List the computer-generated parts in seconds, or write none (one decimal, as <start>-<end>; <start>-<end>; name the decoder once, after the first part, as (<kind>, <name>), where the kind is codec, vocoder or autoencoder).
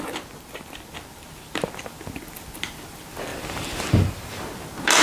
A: 3.3-4.4 (vocoder, BigVGAN v2)